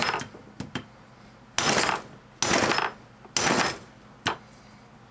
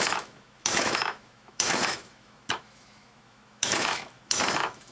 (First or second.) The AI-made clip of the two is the second